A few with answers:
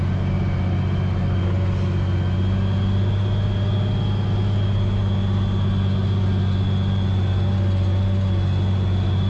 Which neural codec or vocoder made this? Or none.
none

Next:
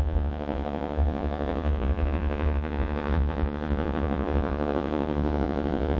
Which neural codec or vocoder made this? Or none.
vocoder, Vocos